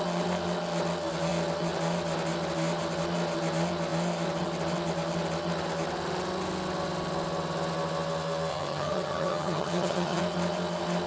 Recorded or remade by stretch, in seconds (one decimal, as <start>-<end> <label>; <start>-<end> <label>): 0.0-8.5 recorded; 8.5-10.2 remade; 10.2-11.1 recorded